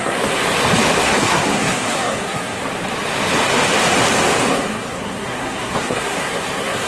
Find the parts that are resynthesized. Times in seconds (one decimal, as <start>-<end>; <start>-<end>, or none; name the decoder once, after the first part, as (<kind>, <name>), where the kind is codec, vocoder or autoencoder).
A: 0.0-0.4 (codec, SNAC); 1.0-2.6; 4.5-6.9